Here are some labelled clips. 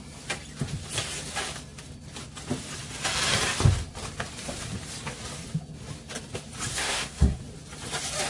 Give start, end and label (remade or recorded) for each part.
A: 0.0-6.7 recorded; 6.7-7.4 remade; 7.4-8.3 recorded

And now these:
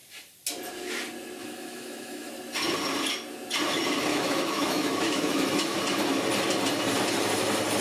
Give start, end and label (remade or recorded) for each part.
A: 0.0-1.4 recorded; 1.4-2.3 remade; 2.3-4.1 recorded; 4.1-5.8 remade; 5.8-7.8 recorded

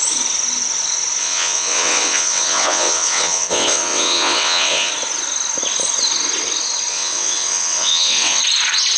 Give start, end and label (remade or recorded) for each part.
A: 0.0-1.2 recorded; 1.2-4.9 remade; 4.9-6.9 recorded; 6.9-8.4 remade; 8.4-9.0 recorded